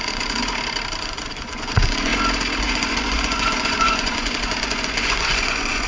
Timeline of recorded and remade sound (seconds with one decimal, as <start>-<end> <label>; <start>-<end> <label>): 0.0-0.4 remade; 0.4-1.0 recorded; 1.0-2.1 remade; 2.1-2.6 recorded; 2.6-5.9 remade